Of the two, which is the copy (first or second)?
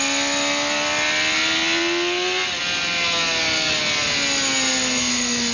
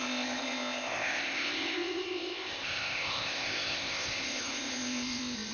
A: second